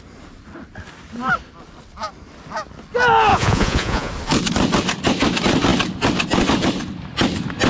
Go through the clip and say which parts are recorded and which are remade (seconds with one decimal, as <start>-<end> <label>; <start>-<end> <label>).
0.0-3.3 recorded; 3.3-4.1 remade; 4.1-7.7 recorded